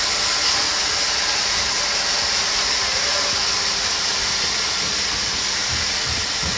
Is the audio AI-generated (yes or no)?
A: yes